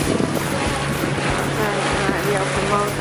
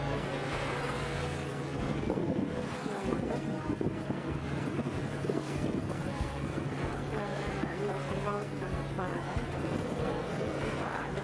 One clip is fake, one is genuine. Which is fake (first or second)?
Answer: second